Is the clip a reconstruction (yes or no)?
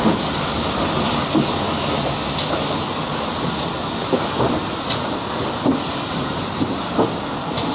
no